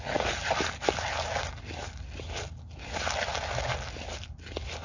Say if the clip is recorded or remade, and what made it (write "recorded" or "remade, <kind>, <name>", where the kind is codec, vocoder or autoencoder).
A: recorded